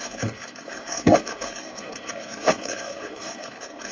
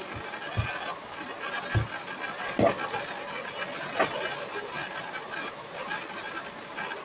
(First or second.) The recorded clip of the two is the second